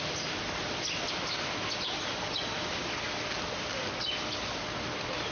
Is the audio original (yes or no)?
yes